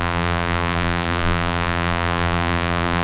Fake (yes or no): yes